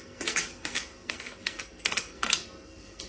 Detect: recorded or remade remade